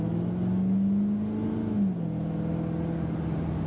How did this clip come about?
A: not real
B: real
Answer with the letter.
B